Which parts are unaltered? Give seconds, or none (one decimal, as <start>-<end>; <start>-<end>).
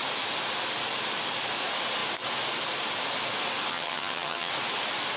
0.0-3.7; 4.5-5.2